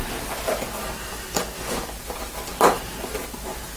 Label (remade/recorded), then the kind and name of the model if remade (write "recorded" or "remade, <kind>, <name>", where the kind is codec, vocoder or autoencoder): recorded